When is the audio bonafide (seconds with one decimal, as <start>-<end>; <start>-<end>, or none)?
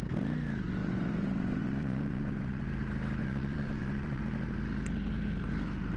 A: 0.0-0.8; 2.6-3.2; 4.2-6.0